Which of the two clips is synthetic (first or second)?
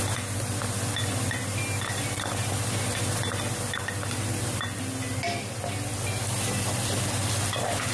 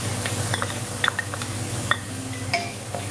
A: second